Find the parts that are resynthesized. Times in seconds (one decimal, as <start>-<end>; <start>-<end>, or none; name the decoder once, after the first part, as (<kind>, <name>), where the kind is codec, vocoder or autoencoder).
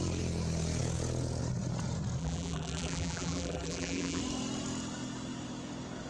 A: 2.2-4.2 (vocoder, BigVGAN v2)